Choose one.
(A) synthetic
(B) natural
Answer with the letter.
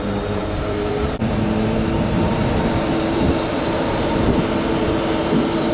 A